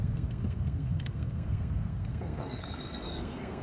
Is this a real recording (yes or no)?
no